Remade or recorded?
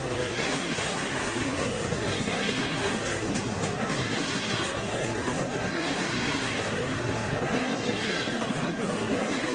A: remade